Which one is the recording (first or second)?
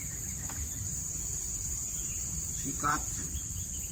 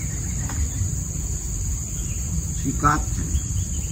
second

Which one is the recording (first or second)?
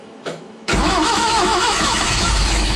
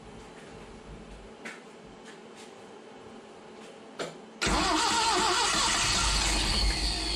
second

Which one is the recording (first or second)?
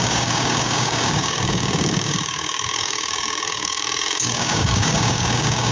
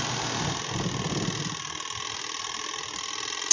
second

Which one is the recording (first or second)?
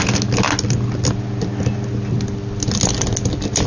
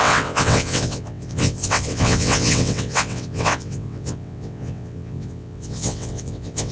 first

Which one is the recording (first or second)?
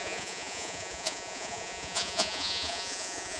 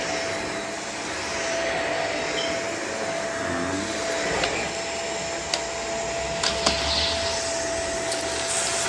second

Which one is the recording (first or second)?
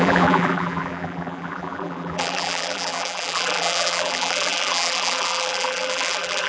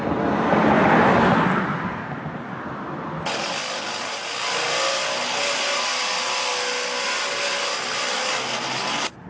second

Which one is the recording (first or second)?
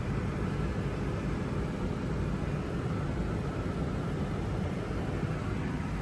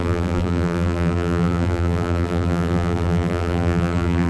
first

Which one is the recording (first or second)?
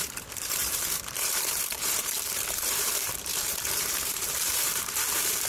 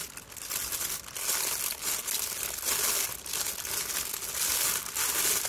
second